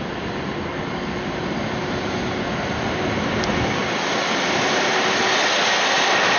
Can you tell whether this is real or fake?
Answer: real